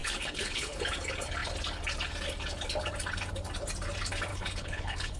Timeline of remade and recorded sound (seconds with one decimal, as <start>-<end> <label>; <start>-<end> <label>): 0.0-0.8 remade; 0.8-4.3 recorded; 4.3-5.2 remade